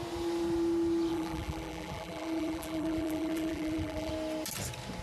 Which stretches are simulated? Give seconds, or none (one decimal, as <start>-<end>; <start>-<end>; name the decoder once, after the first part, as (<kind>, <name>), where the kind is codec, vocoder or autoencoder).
1.1-4.1 (vocoder, BigVGAN v2)